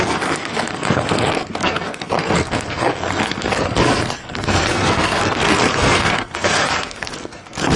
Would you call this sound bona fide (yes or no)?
no